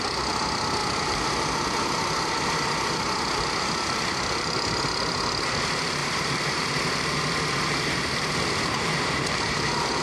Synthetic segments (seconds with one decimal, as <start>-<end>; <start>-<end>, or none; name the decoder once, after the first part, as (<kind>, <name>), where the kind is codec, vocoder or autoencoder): 6.0-7.2 (vocoder, BigVGAN v2)